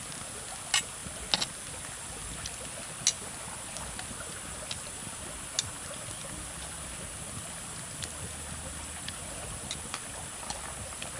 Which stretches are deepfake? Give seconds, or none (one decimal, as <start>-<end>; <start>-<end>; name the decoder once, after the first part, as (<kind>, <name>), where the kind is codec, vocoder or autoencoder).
none